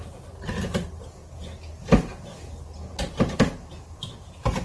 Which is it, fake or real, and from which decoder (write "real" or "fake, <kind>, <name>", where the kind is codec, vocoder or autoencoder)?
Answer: real